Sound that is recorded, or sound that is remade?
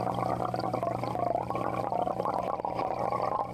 recorded